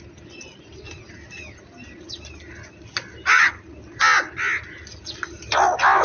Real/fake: real